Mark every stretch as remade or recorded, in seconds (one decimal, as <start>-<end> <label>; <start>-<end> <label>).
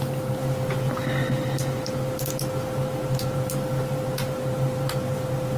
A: 0.0-5.6 recorded